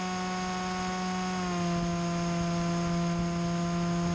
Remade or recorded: recorded